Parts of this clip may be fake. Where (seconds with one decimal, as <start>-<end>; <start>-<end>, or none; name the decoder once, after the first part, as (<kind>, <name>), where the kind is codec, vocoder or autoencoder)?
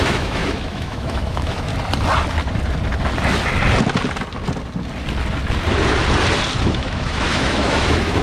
0.0-1.7 (autoencoder, DAC-VAE); 6.6-8.2